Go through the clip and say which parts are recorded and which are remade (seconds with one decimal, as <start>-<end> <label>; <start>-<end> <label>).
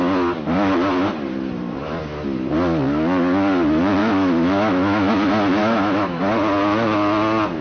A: 0.0-4.0 recorded; 4.0-5.1 remade; 5.1-5.6 recorded; 5.6-6.2 remade; 6.2-7.6 recorded